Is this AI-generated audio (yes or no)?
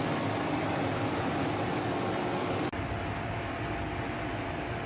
no